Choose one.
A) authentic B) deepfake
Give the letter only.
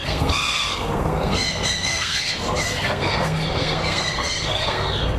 B